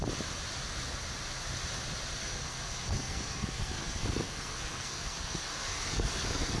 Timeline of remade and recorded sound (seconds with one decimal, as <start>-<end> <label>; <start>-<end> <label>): 0.0-2.2 recorded; 2.2-6.6 remade